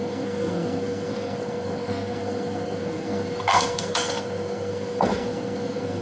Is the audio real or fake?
fake